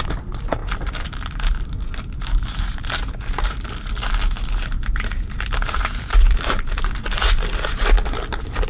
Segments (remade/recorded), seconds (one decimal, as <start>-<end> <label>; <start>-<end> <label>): 0.0-8.7 remade